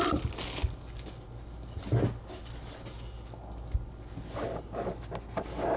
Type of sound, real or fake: real